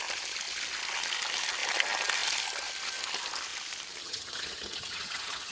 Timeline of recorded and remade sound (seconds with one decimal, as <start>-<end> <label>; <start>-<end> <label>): 0.0-4.0 recorded; 4.0-5.5 remade